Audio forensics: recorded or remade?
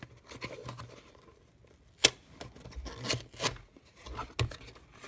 recorded